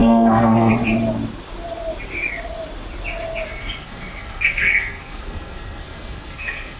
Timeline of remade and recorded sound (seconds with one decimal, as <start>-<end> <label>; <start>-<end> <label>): 0.0-0.7 remade; 0.7-3.5 recorded; 3.5-6.8 remade